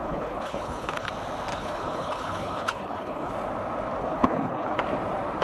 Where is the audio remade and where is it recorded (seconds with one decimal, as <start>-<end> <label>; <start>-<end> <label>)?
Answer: 0.0-1.1 remade; 1.1-1.5 recorded; 1.5-3.3 remade; 3.3-4.0 recorded; 4.0-4.8 remade; 4.8-5.4 recorded